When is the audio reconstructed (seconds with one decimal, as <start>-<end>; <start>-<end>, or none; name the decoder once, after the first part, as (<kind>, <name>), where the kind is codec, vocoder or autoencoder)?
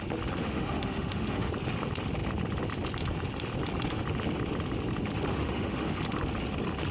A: 0.4-1.5 (autoencoder, DAC-VAE); 5.3-6.0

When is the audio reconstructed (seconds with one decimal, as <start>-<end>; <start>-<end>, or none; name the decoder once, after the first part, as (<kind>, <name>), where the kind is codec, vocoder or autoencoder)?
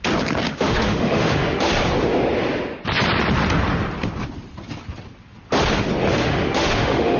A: 0.5-1.7 (autoencoder, DAC-VAE); 6.2-7.2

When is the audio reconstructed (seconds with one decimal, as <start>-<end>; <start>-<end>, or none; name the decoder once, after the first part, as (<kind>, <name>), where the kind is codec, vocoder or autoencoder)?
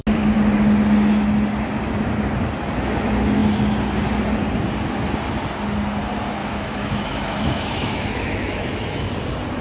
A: 6.4-9.1 (autoencoder, DAC-VAE)